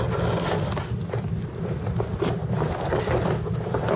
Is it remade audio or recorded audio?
recorded